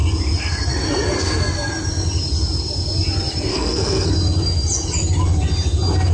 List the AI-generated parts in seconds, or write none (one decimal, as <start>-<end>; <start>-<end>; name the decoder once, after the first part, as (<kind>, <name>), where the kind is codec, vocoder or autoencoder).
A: 3.5-4.1 (codec, SNAC)